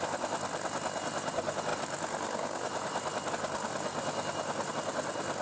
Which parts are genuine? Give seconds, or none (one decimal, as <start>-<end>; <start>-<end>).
0.0-5.4